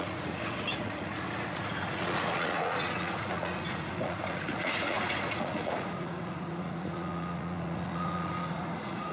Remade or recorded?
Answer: remade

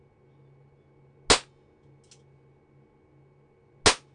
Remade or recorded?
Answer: recorded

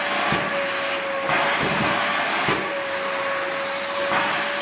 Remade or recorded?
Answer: recorded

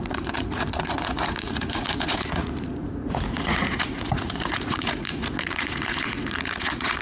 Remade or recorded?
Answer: remade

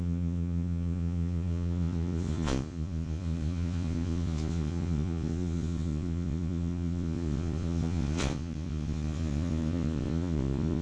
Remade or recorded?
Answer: remade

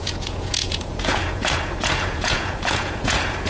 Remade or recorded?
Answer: remade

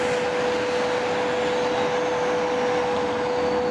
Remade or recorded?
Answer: recorded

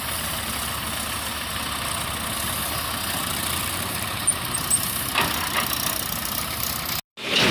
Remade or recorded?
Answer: recorded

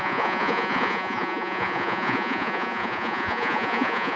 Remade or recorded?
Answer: remade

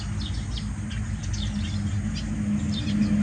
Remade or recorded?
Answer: recorded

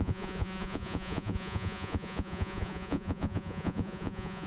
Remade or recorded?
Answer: remade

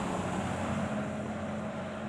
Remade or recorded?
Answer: recorded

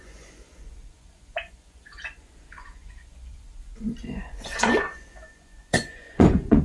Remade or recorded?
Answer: remade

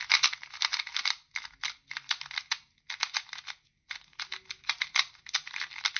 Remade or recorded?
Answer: recorded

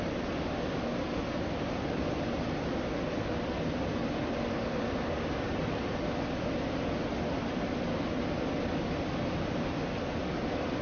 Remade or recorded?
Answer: recorded